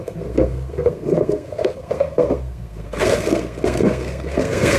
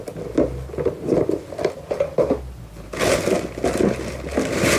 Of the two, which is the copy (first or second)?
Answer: first